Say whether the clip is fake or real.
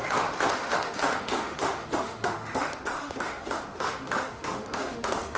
fake